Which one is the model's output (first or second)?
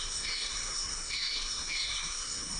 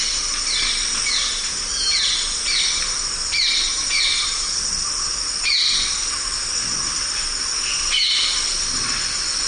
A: first